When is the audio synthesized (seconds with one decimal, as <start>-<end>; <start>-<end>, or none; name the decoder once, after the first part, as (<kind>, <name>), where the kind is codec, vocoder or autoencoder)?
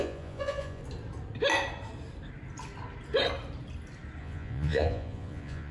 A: 0.0-0.8 (vocoder, Vocos); 4.2-5.7